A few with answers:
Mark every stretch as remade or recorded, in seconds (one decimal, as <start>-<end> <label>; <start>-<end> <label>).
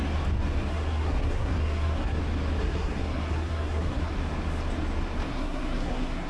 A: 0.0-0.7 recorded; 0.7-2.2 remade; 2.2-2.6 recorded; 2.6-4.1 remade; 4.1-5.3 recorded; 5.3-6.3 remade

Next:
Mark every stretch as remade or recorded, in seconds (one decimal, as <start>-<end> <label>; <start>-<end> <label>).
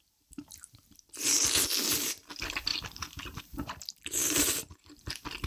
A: 0.0-2.7 recorded; 2.7-3.4 remade; 3.4-4.2 recorded; 4.2-4.9 remade; 4.9-5.5 recorded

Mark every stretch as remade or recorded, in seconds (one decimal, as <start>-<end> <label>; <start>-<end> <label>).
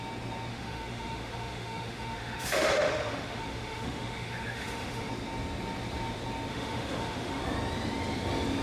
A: 0.0-0.5 recorded; 0.5-5.1 remade; 5.1-6.5 recorded; 6.5-7.4 remade; 7.4-8.6 recorded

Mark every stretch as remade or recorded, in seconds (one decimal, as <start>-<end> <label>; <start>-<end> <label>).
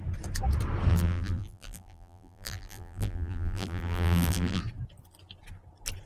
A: 0.0-0.9 recorded; 0.9-4.6 remade; 4.6-6.1 recorded